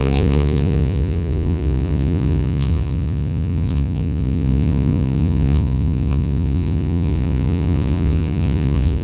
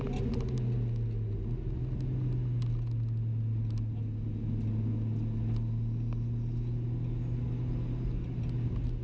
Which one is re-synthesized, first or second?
first